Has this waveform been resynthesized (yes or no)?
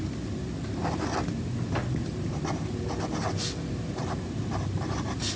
no